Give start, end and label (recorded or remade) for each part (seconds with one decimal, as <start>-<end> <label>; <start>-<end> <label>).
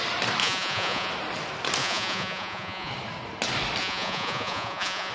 0.0-0.4 recorded; 0.4-1.1 remade; 1.1-1.8 recorded; 1.8-2.9 remade; 2.9-3.8 recorded; 3.8-5.1 remade